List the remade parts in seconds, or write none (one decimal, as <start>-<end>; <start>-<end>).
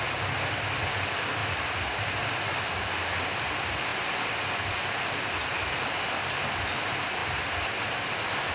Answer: 0.0-5.5; 6.1-8.5